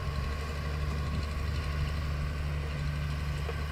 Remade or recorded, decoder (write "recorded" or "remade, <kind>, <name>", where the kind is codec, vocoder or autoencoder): recorded